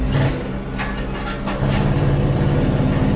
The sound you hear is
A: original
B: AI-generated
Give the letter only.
A